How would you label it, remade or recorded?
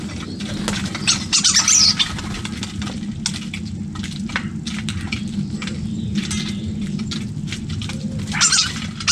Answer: recorded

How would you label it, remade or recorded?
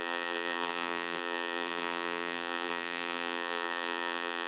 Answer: remade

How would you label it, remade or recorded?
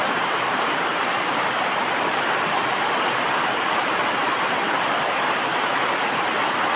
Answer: remade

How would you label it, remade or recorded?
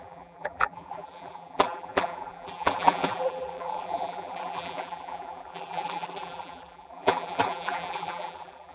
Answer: remade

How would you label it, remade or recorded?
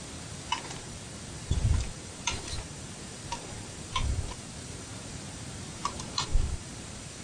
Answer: remade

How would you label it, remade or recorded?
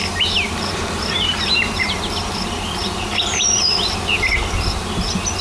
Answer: remade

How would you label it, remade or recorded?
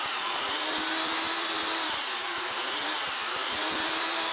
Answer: remade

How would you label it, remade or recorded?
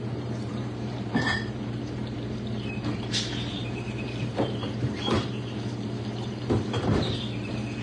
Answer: remade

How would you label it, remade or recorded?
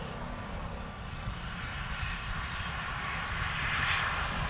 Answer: recorded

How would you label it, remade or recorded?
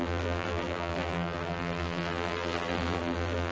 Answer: remade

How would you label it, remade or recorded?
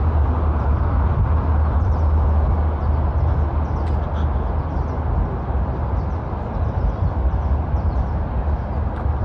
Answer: recorded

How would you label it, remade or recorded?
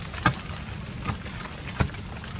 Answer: recorded